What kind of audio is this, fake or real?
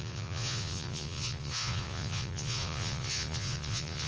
fake